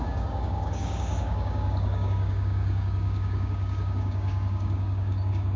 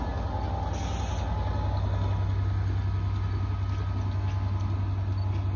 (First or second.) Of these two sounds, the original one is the second